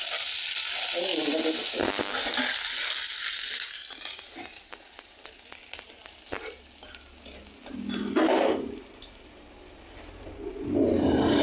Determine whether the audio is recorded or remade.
recorded